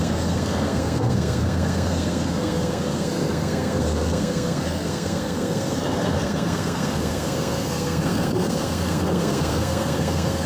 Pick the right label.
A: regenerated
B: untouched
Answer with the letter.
A